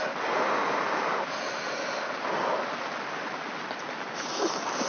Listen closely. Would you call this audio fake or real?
real